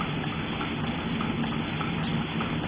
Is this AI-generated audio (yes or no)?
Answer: no